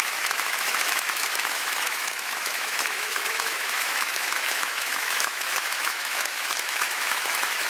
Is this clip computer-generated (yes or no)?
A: yes